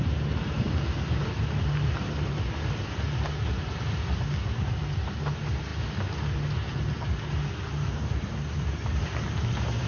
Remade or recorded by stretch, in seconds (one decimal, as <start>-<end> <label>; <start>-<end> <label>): 0.0-9.9 recorded